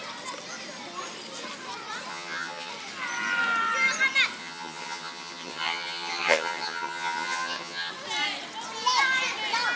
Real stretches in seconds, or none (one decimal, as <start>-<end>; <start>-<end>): 0.0-2.1; 2.7-4.4; 7.9-9.8